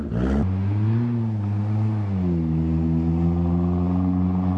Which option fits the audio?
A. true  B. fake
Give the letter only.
A